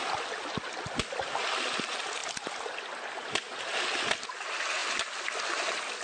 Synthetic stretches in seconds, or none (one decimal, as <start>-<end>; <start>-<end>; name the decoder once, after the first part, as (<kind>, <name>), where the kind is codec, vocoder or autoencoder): none